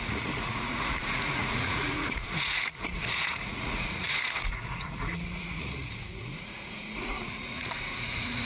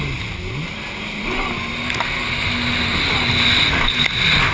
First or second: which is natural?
second